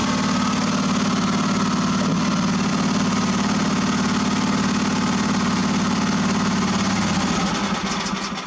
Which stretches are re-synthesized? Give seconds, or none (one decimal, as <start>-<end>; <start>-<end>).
none